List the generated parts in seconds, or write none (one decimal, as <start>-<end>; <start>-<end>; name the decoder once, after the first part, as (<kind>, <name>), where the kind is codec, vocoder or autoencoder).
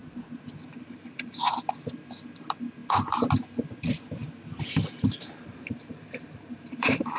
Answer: 0.0-1.5 (vocoder, BigVGAN v2); 4.2-7.2